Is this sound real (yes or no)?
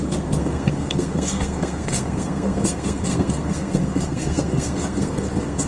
no